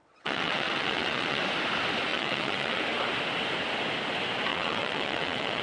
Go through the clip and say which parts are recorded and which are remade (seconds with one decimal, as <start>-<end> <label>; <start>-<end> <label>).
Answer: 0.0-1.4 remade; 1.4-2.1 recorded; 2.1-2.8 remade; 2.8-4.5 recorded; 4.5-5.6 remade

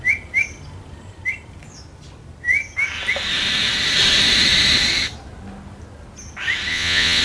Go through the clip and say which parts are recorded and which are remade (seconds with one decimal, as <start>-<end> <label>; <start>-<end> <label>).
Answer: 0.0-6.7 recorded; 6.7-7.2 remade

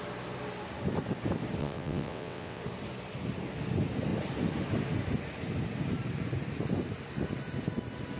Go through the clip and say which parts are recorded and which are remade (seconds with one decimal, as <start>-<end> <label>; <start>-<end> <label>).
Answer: 0.0-1.6 recorded; 1.6-2.6 remade; 2.6-8.2 recorded